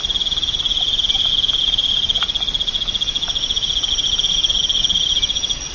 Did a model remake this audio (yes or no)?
no